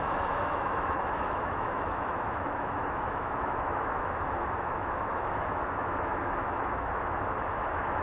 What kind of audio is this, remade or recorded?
remade